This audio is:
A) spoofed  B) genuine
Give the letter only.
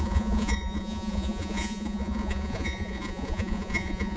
A